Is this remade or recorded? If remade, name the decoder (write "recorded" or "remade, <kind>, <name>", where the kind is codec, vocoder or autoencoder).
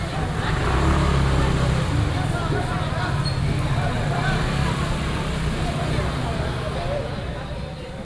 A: recorded